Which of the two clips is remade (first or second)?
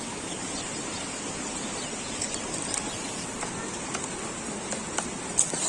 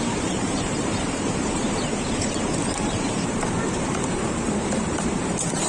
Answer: second